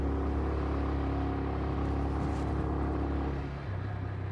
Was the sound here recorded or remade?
recorded